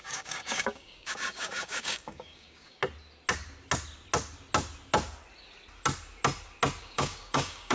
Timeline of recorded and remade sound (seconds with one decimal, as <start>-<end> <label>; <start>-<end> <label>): 0.0-2.8 remade; 2.8-6.8 recorded; 6.8-7.7 remade